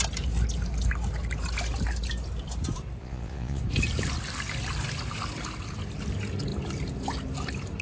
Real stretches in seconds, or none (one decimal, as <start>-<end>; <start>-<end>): 0.0-3.0; 3.6-7.8

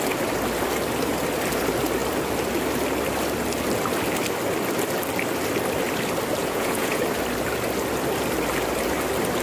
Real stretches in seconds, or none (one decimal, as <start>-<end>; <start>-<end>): 0.0-6.4; 7.0-9.4